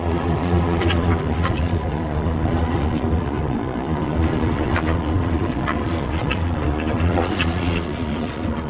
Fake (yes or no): yes